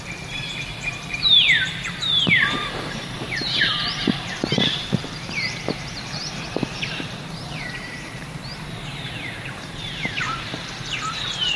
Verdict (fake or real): fake